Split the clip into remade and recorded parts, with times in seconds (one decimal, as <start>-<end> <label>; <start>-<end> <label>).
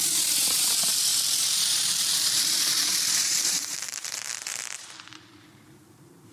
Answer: 0.0-4.3 remade; 4.3-5.8 recorded; 5.8-6.3 remade